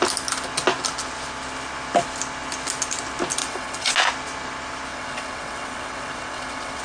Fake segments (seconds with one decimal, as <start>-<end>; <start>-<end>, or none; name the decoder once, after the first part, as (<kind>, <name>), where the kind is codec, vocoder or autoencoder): 3.4-3.9 (vocoder, WaveNeXt); 4.9-6.8